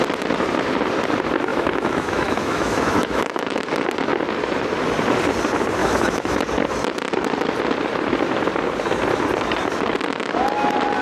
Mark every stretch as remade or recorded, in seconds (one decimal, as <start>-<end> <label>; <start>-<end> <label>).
0.0-1.5 recorded; 1.5-3.6 remade; 3.6-5.8 recorded; 5.8-6.4 remade; 6.4-11.0 recorded